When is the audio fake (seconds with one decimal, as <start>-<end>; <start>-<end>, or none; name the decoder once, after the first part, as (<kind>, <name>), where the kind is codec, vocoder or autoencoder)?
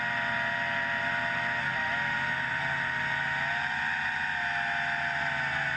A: none